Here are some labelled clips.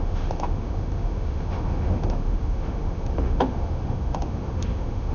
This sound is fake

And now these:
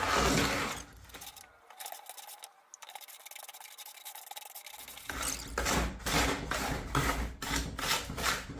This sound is real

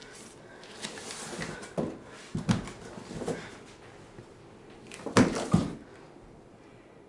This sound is real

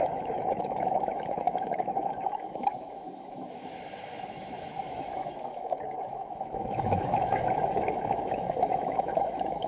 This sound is fake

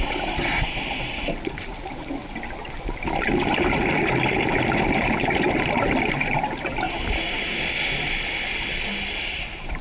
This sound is real